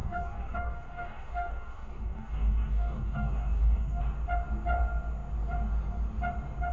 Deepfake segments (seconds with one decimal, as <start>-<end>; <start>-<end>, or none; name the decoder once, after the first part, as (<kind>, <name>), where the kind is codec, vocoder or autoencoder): 0.0-4.0 (codec, DAC)